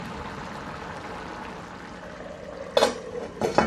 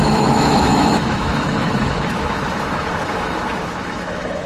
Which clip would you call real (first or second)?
first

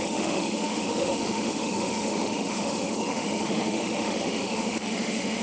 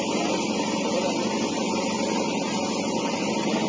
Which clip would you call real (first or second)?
second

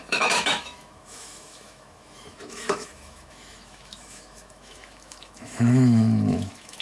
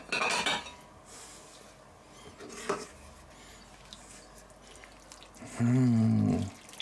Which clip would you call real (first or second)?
second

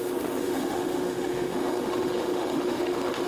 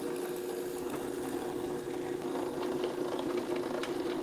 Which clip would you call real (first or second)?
second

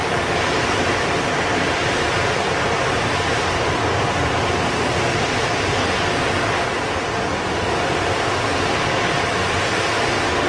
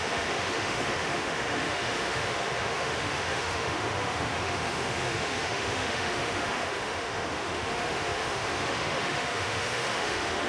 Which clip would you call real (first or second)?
first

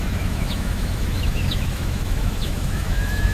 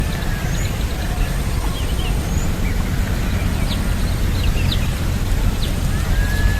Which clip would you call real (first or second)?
second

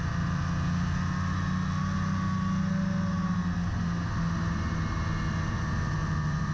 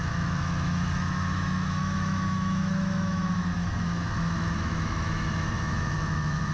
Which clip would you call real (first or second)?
first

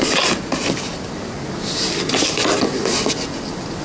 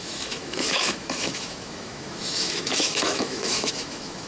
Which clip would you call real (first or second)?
first